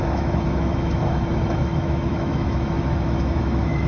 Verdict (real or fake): fake